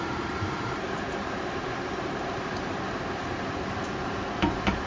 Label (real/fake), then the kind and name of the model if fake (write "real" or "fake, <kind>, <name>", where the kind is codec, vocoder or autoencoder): fake, vocoder, BigVGAN v2